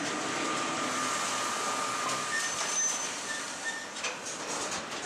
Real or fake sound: real